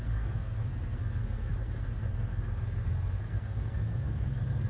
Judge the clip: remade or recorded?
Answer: remade